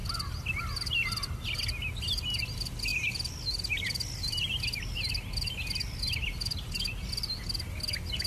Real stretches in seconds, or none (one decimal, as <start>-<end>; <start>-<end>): 0.0-8.3